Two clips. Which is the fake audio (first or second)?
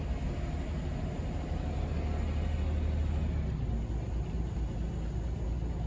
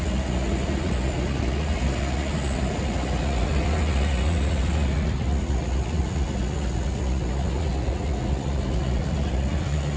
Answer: second